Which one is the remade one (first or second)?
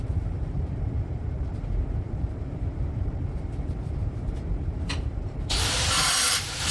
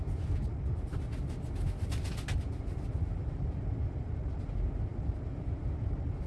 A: first